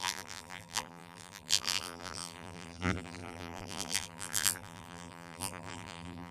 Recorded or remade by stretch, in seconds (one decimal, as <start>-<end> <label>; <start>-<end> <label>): 0.0-6.3 remade